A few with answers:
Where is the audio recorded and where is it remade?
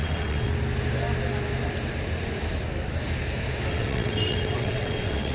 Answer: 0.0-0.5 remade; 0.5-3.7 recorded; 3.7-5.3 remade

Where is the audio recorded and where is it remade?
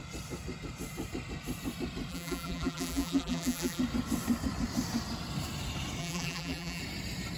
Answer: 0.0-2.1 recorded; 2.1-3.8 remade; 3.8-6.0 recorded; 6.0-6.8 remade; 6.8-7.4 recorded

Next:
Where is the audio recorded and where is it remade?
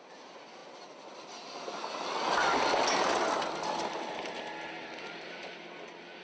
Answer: 0.0-6.2 recorded